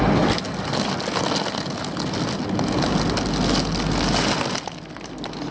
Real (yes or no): yes